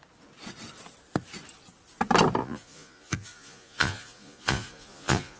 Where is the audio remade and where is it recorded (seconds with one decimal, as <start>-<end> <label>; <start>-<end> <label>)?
0.0-2.4 recorded; 2.4-5.4 remade